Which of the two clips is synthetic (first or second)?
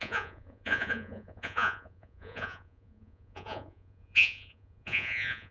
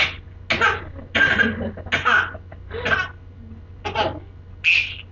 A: first